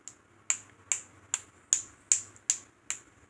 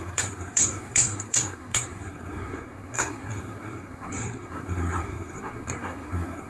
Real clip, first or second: first